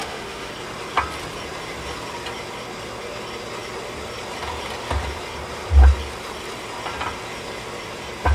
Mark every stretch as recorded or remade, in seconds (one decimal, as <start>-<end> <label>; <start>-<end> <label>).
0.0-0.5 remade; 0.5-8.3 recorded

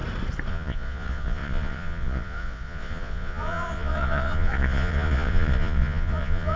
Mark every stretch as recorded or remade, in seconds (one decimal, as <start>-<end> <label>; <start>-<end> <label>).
0.0-0.5 recorded; 0.5-6.6 remade

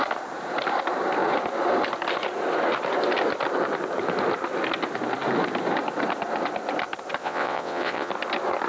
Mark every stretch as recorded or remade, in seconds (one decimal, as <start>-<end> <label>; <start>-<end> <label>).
0.0-7.2 recorded; 7.2-8.1 remade; 8.1-8.7 recorded